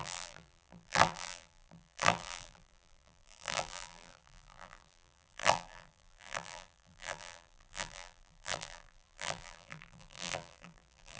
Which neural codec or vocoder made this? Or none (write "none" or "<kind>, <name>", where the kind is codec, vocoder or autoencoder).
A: vocoder, BigVGAN v2